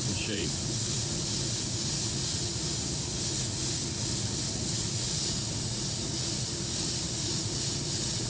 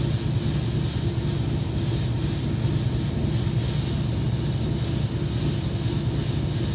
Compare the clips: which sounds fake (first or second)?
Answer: first